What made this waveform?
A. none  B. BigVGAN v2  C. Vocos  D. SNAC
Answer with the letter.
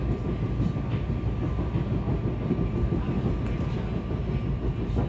A